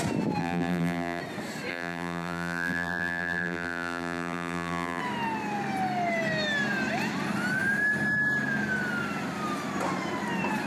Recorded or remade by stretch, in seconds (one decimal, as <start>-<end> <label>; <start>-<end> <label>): 0.0-0.4 recorded; 0.4-1.2 remade; 1.2-1.7 recorded; 1.7-5.0 remade; 5.0-10.7 recorded